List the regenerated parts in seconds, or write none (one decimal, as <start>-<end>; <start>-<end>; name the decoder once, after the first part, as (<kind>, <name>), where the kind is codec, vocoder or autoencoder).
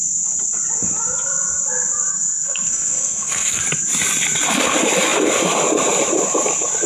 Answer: 2.1-3.6 (codec, SNAC)